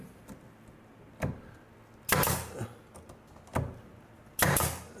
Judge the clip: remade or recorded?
recorded